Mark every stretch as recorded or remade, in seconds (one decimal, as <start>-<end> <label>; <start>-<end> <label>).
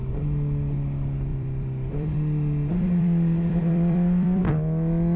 0.0-1.3 recorded; 1.3-4.4 remade; 4.4-5.2 recorded